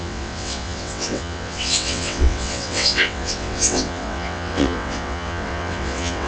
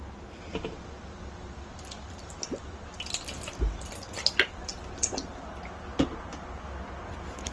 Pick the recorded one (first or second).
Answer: second